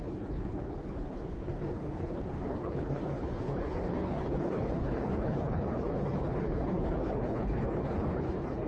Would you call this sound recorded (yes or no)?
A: no